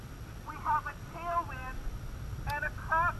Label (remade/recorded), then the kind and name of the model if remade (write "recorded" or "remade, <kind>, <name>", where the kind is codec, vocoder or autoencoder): recorded